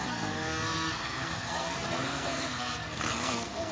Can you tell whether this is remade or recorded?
remade